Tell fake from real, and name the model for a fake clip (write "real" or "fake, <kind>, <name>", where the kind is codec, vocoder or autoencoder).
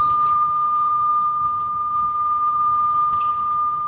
fake, vocoder, HiFi-GAN